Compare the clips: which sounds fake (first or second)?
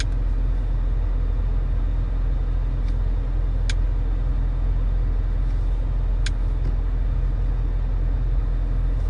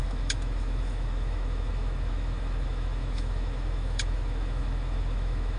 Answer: second